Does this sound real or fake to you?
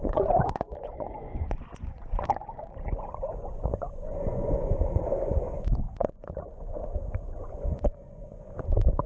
fake